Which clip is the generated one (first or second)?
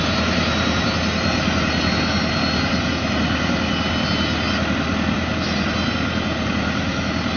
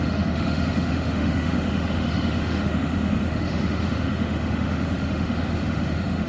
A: second